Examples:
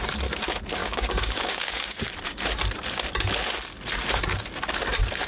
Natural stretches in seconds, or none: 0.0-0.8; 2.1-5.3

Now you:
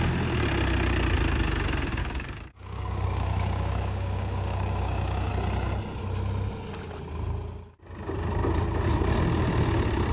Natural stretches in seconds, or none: 0.0-2.0; 5.3-10.1

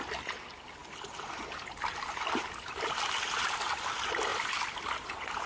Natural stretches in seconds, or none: 0.0-5.5

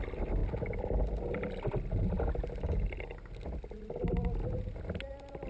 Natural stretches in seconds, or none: 0.0-5.5

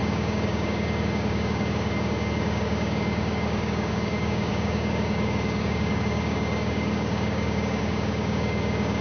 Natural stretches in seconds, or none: none